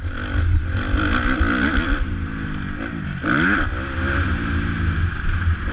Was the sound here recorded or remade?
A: recorded